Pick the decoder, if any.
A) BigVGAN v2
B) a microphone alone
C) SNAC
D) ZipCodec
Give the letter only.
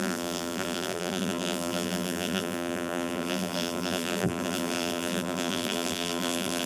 A